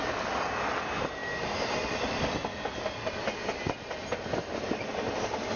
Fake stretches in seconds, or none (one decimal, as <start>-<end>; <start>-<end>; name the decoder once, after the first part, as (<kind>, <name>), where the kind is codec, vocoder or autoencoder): none